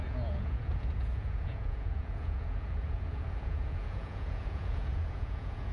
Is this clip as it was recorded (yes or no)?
no